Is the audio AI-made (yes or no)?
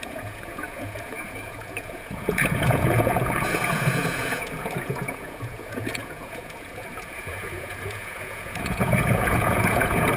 yes